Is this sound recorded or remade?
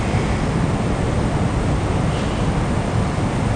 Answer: remade